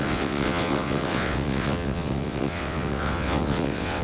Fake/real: fake